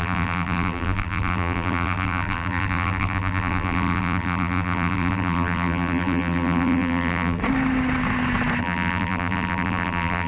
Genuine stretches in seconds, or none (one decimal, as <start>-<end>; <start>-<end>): 7.4-8.6